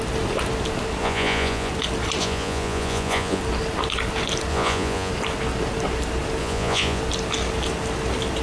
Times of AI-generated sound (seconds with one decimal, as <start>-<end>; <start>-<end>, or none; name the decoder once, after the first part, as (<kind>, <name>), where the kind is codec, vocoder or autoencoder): 1.0-1.7 (vocoder, Vocos); 2.2-3.4; 4.5-5.1; 6.4-7.0